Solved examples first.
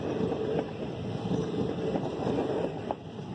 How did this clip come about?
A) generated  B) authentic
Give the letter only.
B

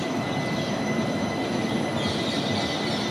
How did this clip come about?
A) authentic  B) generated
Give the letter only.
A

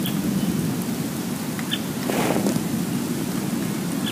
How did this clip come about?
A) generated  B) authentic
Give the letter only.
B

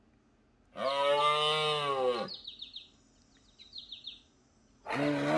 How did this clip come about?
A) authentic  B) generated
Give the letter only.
A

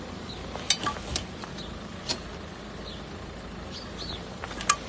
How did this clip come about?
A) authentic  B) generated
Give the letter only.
A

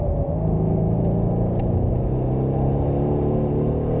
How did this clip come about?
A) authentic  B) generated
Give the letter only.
A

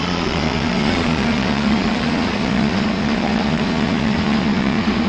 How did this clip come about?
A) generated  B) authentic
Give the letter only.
A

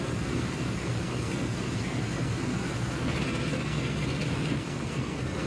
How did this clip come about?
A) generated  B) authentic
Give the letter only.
A